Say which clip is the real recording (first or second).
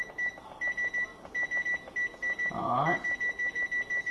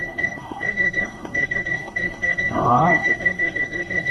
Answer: first